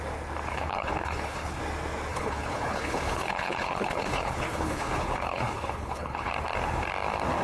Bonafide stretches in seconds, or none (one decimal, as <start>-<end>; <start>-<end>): 0.0-0.5; 1.6-2.1; 6.3-7.4